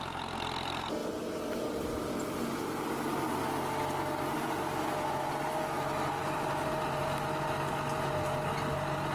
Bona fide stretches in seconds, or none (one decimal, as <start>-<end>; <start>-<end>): 0.0-9.1